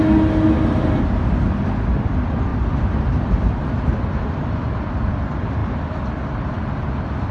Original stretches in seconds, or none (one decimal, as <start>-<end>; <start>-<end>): 0.0-2.5; 3.6-7.3

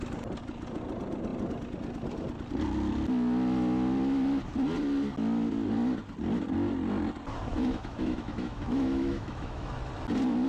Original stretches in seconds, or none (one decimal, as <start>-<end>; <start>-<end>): 0.0-7.5; 9.7-10.5

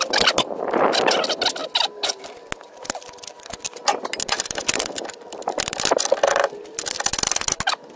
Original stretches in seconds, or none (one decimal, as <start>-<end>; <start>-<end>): 0.0-3.3; 6.6-8.0

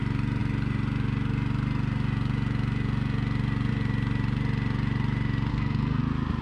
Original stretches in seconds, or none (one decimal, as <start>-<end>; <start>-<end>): 0.0-5.5; 6.0-6.4

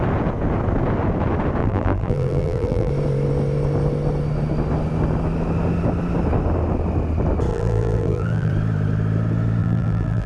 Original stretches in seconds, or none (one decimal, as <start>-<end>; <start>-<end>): 0.0-1.6; 2.9-7.5; 8.5-9.6

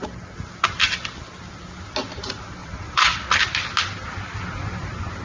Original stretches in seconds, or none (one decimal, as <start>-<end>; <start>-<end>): 0.0-2.6; 3.2-5.2

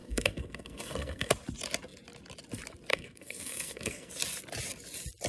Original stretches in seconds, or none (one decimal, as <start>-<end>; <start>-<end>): 1.3-2.9; 4.1-5.3